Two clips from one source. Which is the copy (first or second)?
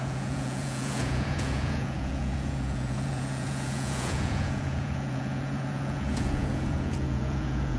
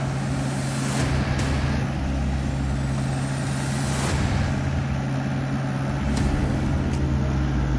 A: first